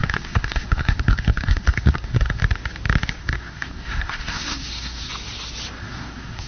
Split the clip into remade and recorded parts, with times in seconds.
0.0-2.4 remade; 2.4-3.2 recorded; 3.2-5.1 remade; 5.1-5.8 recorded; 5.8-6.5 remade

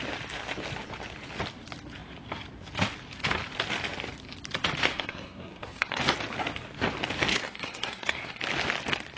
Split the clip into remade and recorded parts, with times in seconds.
0.0-4.9 recorded; 4.9-6.0 remade; 6.0-7.3 recorded; 7.3-8.4 remade; 8.4-9.2 recorded

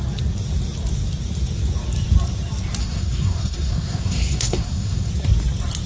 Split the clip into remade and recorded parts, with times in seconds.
0.0-2.8 recorded; 2.8-5.1 remade; 5.1-5.9 recorded